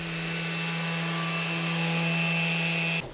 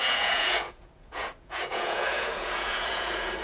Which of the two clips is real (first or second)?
first